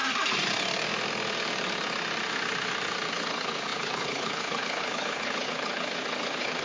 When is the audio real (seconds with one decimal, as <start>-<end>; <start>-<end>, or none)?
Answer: 0.0-3.1